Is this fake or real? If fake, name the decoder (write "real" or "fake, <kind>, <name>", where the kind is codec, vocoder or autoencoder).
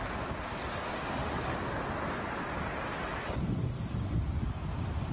real